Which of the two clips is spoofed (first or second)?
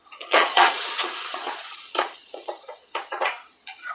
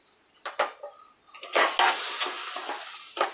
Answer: first